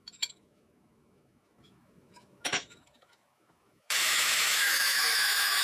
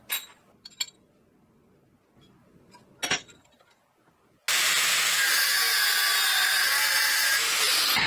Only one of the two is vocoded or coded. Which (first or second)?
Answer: first